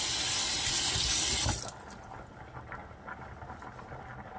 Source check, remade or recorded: recorded